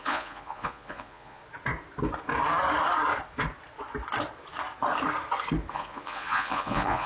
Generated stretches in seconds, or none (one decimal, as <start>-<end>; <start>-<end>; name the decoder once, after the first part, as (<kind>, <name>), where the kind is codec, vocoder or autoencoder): 0.0-1.4 (vocoder, Vocos); 5.7-7.1